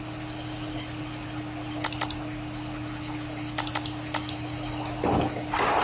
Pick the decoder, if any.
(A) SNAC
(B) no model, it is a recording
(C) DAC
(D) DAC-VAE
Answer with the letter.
B